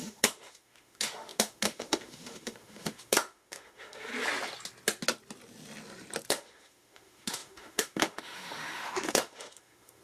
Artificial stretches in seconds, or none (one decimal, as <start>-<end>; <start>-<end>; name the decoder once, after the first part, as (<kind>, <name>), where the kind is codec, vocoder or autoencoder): 0.0-4.1 (autoencoder, DAC-VAE); 6.3-10.0